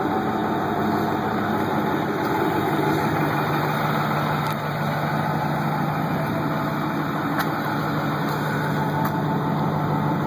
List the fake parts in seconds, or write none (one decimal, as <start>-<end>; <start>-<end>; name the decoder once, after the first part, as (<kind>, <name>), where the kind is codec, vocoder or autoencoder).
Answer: none